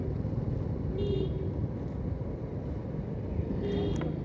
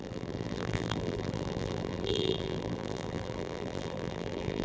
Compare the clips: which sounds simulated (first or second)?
second